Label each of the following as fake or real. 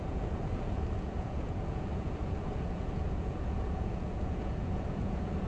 fake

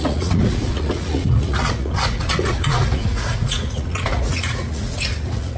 fake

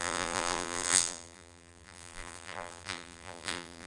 fake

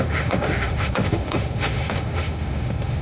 fake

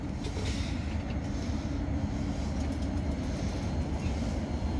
real